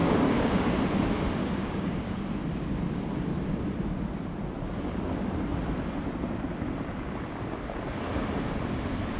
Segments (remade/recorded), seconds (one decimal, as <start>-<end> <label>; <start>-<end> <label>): 0.0-0.8 remade; 0.8-1.4 recorded; 1.4-2.2 remade; 2.2-9.2 recorded